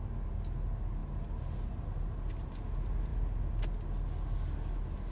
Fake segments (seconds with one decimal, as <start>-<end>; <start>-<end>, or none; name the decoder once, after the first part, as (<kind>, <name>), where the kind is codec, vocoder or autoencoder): none